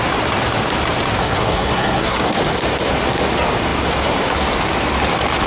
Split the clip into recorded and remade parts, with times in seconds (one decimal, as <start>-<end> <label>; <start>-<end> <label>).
0.0-1.2 recorded; 1.2-2.4 remade; 2.4-5.5 recorded